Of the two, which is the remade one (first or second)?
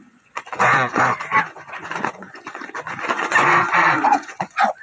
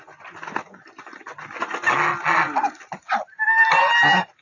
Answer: first